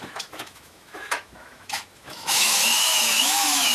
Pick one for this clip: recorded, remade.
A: remade